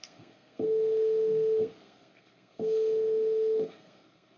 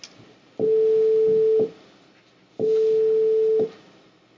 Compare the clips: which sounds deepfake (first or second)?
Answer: first